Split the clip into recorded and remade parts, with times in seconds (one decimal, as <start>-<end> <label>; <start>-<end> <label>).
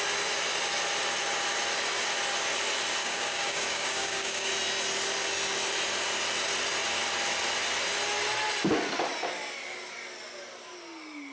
0.0-3.0 recorded; 3.0-4.5 remade; 4.5-11.3 recorded